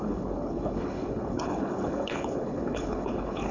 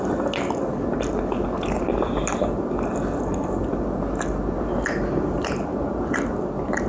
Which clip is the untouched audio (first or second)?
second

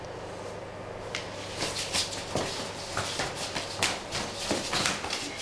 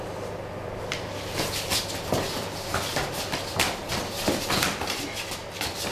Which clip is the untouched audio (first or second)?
first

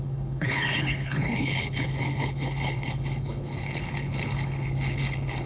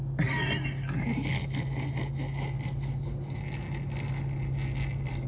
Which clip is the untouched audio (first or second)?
second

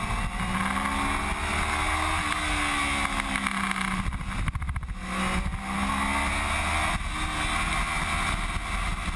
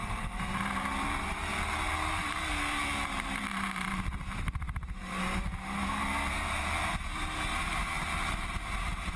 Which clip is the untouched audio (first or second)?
first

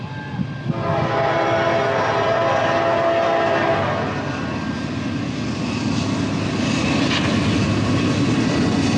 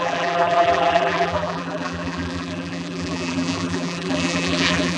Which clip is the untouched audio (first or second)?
first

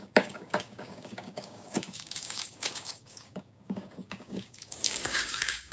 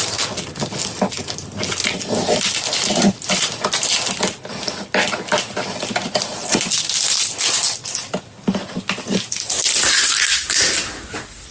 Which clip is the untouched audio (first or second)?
second